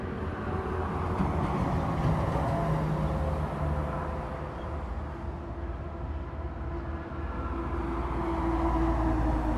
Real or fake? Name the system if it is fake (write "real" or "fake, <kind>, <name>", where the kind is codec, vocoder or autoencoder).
real